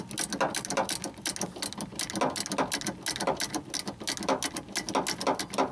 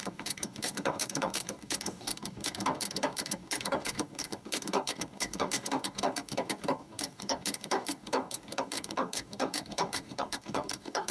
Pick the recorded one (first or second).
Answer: first